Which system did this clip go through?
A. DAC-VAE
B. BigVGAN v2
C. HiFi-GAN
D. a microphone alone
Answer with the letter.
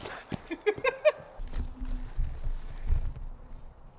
D